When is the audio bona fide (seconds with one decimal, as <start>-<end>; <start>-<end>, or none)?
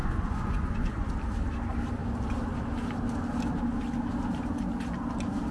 1.1-5.5